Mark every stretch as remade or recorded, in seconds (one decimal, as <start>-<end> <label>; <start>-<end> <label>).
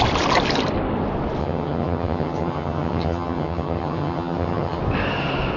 0.0-1.4 recorded; 1.4-4.8 remade; 4.8-5.6 recorded